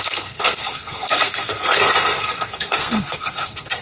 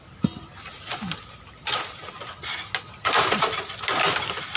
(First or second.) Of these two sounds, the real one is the second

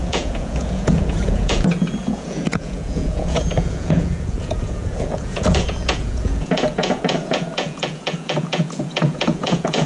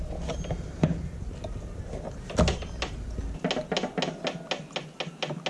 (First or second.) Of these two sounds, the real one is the second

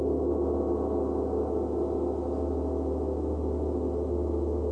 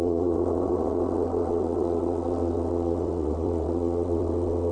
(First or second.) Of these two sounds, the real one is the first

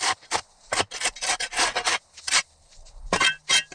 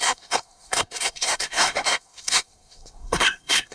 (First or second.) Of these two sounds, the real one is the first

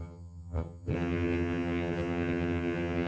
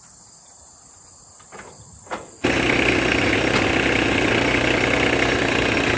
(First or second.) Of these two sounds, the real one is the second